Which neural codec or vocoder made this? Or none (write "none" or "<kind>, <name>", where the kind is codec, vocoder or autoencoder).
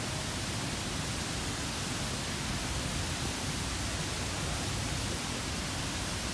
none